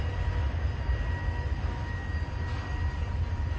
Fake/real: real